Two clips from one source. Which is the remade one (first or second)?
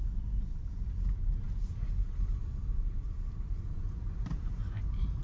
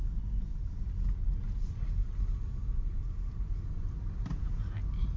first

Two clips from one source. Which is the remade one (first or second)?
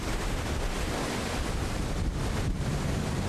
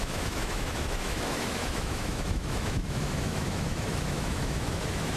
second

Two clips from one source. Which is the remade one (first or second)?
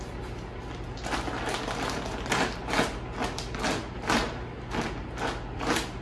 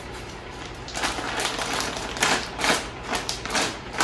second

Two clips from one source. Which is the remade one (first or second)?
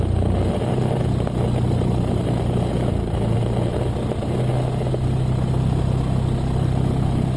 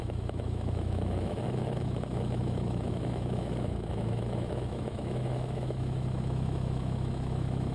second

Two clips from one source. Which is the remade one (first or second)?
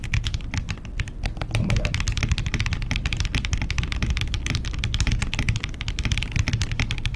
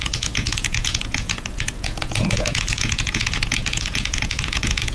second